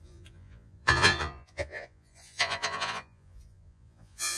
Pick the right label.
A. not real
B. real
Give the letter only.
A